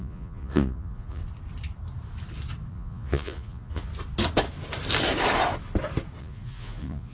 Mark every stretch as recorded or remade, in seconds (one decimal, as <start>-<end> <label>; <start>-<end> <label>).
0.0-1.2 remade; 1.2-2.7 recorded; 2.7-3.9 remade; 3.9-6.2 recorded; 6.2-7.1 remade